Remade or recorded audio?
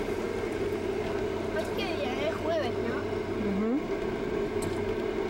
recorded